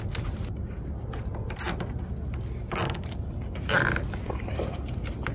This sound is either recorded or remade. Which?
recorded